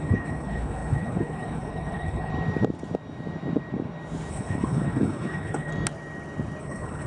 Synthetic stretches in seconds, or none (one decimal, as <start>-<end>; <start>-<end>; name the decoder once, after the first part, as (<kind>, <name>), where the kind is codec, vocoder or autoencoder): 0.0-2.3 (codec, HILCodec); 4.3-5.7; 6.6-7.1